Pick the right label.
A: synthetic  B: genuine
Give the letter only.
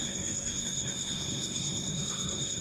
A